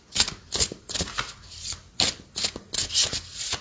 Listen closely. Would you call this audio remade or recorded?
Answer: recorded